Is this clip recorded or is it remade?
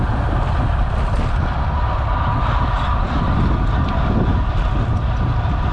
recorded